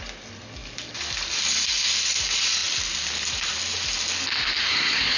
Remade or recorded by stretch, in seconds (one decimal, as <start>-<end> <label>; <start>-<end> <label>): 0.0-4.6 recorded; 4.6-5.2 remade